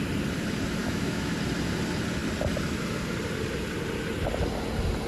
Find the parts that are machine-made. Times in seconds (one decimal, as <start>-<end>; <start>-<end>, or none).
0.8-1.3